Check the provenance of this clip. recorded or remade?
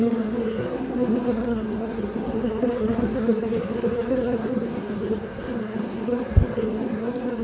remade